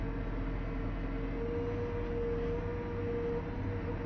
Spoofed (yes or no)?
no